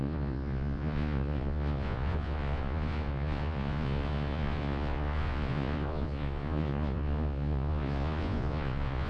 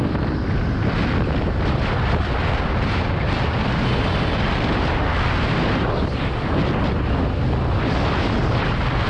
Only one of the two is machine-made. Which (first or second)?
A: first